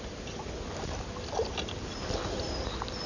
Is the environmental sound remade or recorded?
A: recorded